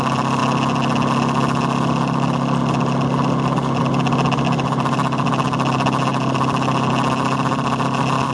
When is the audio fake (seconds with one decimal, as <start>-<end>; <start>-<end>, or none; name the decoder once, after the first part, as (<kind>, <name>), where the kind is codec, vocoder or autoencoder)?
none